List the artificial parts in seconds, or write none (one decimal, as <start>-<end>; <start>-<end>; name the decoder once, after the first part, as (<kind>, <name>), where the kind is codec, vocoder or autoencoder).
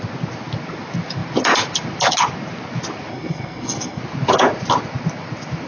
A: 3.1-4.0 (codec, SNAC)